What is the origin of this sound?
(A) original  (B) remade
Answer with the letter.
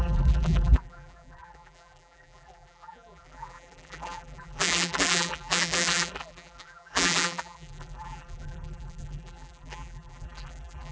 B